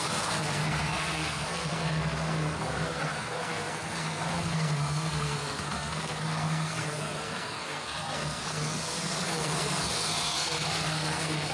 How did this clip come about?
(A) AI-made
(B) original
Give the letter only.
A